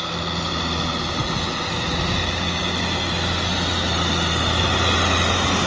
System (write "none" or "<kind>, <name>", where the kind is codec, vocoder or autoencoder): none